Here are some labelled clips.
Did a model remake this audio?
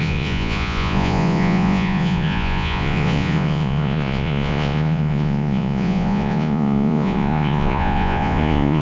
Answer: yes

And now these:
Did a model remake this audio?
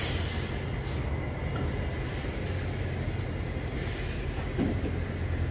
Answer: no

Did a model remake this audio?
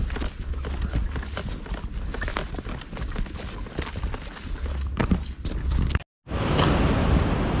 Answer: no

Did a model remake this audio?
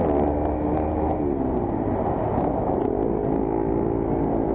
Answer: no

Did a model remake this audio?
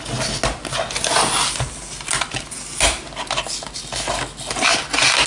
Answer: no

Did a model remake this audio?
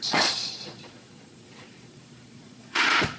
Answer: yes